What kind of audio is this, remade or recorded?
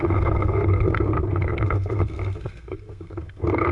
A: remade